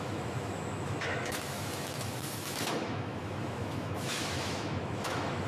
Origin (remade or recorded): remade